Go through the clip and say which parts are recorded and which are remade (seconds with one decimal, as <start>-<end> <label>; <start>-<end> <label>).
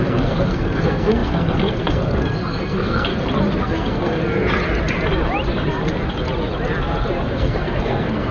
0.0-3.1 remade; 3.1-3.6 recorded; 3.6-4.2 remade; 4.2-7.2 recorded; 7.2-8.3 remade